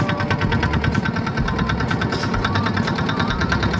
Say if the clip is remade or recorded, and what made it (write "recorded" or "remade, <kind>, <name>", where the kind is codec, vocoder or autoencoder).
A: recorded